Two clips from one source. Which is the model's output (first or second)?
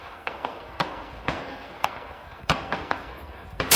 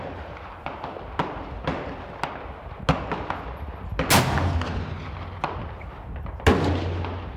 first